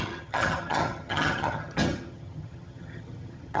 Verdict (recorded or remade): remade